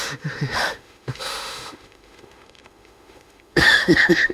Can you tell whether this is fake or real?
fake